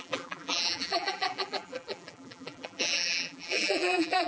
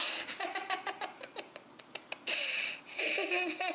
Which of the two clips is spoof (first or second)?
first